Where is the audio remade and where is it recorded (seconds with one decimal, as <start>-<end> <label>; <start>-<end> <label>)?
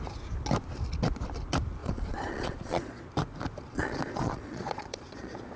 0.0-1.8 recorded; 1.8-3.0 remade; 3.0-3.7 recorded; 3.7-5.6 remade